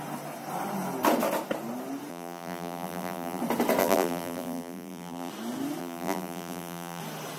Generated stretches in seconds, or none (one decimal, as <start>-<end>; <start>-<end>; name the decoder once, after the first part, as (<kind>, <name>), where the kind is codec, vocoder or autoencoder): 2.1-3.4 (vocoder, BigVGAN v2); 3.8-5.3; 5.8-7.0